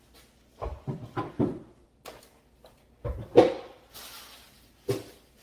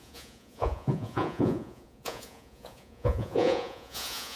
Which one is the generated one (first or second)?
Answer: second